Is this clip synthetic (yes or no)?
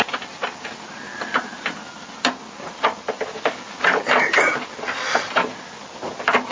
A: no